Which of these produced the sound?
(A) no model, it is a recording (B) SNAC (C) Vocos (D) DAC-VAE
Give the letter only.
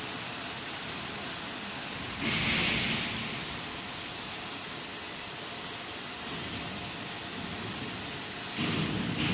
A